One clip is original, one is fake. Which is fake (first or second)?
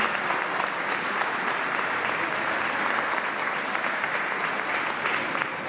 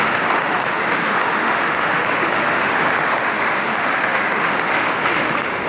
second